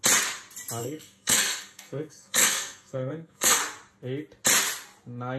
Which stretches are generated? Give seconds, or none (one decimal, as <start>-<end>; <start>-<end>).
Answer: 0.8-3.6